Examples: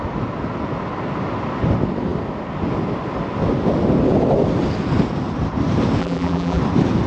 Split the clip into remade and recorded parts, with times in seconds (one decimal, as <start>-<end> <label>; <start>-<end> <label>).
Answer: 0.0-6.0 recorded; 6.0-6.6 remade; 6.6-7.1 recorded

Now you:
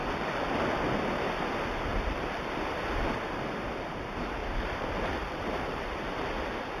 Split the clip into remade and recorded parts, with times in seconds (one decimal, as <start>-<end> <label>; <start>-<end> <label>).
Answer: 0.0-0.7 remade; 0.7-4.4 recorded; 4.4-5.3 remade; 5.3-6.8 recorded

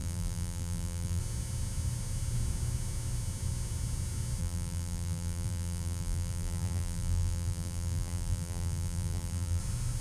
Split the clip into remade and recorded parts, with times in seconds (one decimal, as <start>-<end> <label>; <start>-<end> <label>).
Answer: 0.0-1.2 remade; 1.2-4.4 recorded; 4.4-9.6 remade; 9.6-10.0 recorded

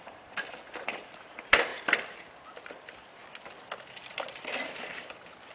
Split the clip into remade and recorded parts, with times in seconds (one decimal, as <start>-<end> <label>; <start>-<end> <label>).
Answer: 0.0-1.7 remade; 1.7-2.7 recorded; 2.7-3.2 remade; 3.2-4.1 recorded; 4.1-5.5 remade

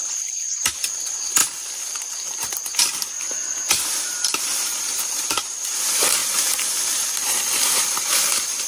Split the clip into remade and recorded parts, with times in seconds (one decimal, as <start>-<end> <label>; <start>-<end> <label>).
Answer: 0.0-1.4 remade; 1.4-3.2 recorded; 3.2-8.7 remade